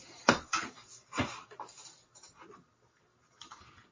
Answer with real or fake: fake